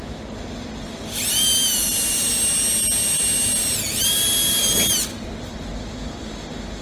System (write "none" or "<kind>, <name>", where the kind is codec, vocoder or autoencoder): none